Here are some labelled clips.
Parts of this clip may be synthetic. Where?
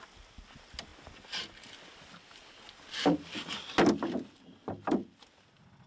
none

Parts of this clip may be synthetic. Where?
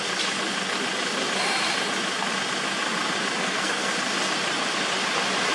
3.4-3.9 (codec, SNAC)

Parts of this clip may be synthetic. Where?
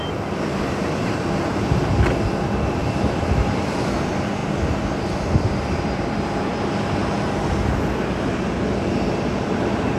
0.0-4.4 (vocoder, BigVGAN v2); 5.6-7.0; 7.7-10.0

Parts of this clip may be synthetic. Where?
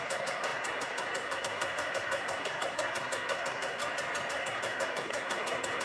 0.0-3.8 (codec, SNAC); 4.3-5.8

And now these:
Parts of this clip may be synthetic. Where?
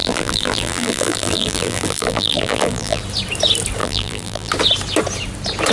0.0-3.0 (vocoder, BigVGAN v2); 3.8-4.5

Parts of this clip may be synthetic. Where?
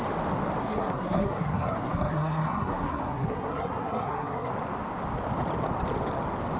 0.6-4.5 (codec, SNAC)